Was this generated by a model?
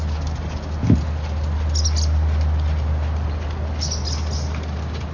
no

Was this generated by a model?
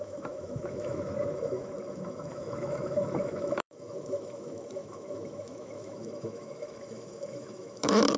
yes